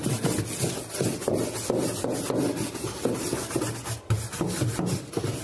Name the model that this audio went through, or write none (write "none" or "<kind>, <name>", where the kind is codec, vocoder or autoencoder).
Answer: none